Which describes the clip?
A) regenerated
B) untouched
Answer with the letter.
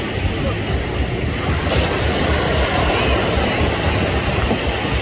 B